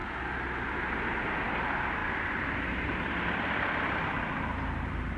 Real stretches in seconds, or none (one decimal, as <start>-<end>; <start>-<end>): 0.0-2.0